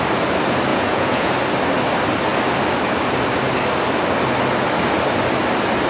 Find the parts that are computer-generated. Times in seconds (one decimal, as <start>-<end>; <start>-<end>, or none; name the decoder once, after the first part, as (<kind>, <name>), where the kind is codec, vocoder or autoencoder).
0.7-1.3 (vocoder, Vocos)